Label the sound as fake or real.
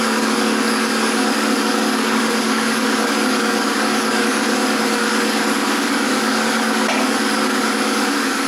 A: fake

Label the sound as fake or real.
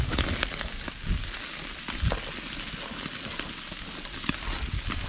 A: real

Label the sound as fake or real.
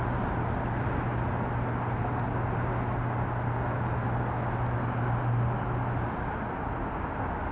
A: real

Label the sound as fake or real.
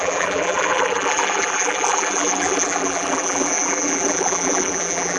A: fake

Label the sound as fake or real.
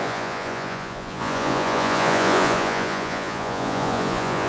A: fake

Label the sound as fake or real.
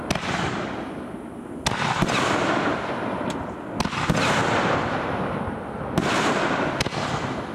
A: real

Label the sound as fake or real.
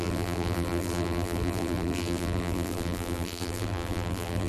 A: fake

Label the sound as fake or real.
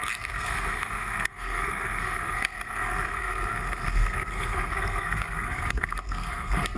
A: fake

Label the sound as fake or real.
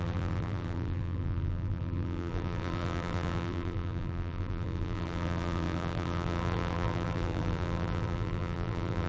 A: fake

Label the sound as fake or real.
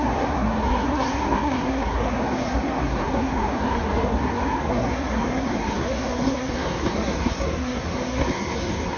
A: fake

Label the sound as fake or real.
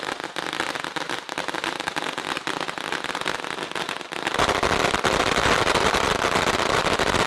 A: real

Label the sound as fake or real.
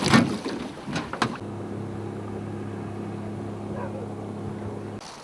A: real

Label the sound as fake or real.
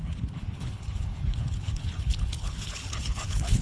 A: fake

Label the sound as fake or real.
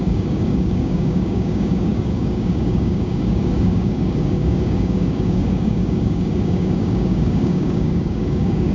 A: fake